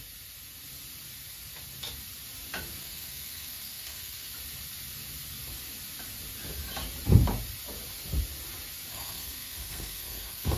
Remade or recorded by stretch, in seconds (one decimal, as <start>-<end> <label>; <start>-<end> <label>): 0.0-2.8 recorded; 2.8-4.3 remade; 4.3-8.9 recorded; 8.9-10.6 remade